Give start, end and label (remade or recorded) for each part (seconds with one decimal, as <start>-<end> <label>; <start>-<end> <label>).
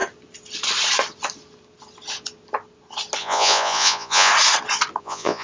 0.0-3.2 recorded; 3.2-4.3 remade; 4.3-5.0 recorded; 5.0-5.4 remade